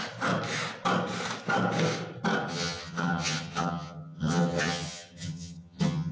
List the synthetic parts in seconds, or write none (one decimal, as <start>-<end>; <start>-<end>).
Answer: 2.5-6.1